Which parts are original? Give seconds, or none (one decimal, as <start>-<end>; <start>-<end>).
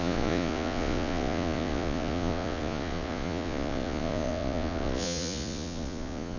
none